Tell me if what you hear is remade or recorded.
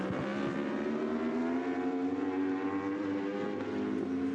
recorded